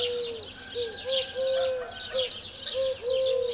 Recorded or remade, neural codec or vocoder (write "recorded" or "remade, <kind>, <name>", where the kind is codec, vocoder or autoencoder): recorded